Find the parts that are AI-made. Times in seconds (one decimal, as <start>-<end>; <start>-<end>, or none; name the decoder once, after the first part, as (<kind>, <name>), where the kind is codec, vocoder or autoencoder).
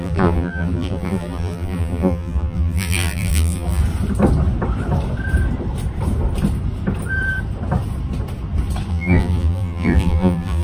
0.0-3.8 (vocoder, BigVGAN v2); 8.9-10.6